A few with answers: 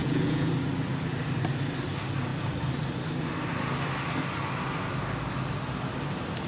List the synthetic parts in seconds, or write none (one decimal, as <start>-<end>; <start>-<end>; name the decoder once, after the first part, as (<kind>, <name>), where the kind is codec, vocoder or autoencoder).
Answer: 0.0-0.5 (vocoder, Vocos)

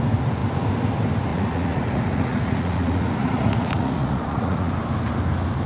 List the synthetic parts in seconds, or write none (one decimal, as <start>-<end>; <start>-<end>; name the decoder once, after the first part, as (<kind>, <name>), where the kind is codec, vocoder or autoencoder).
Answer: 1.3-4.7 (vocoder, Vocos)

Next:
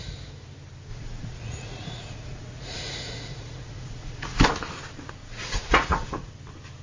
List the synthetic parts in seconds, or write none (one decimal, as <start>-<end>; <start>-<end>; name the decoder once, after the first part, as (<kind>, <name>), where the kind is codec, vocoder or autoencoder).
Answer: 0.9-4.4 (vocoder, Vocos); 5.2-6.3

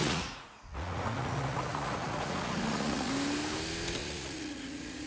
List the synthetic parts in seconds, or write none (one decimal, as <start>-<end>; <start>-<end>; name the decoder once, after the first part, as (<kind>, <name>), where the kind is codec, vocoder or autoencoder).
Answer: 0.0-3.1 (vocoder, Vocos); 4.0-5.1

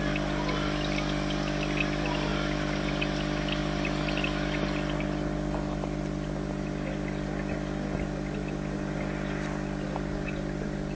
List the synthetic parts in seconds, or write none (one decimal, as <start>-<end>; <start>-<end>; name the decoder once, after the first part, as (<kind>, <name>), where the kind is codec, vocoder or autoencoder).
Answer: none